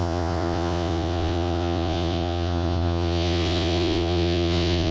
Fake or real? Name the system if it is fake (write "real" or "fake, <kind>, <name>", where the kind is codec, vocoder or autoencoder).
fake, vocoder, Vocos